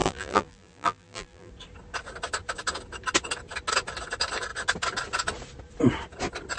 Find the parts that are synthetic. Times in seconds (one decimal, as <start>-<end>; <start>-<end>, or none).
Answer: 0.0-1.5